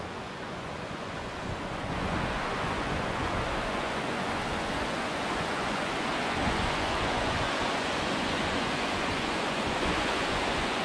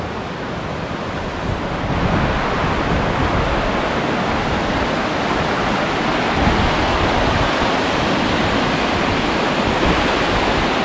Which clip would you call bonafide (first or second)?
second